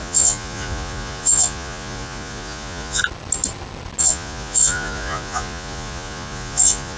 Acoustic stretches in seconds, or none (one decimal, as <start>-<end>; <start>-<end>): 3.0-4.0